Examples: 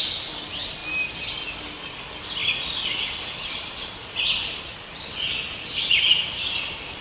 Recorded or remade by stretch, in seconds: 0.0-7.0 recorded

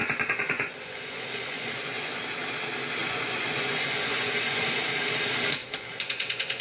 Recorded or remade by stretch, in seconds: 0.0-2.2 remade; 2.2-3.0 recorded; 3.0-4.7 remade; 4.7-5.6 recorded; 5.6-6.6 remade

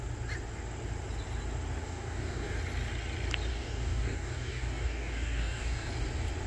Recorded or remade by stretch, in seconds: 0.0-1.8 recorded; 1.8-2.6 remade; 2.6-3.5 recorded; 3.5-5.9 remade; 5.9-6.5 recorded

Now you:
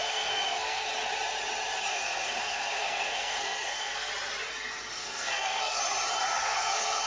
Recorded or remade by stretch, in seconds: 0.0-0.9 remade; 0.9-1.9 recorded; 1.9-4.1 remade; 4.1-4.9 recorded; 4.9-5.8 remade; 5.8-6.4 recorded; 6.4-7.1 remade

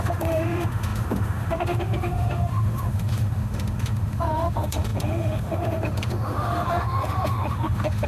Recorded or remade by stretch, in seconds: 0.0-8.1 remade